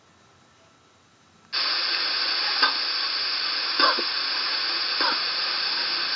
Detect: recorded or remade recorded